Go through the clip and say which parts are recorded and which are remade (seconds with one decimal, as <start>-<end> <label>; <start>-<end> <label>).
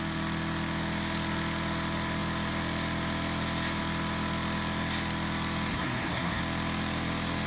0.0-5.7 recorded; 5.7-6.4 remade; 6.4-7.5 recorded